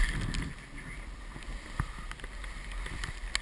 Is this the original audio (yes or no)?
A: yes